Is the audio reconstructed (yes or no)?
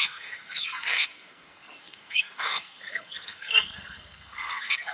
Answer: yes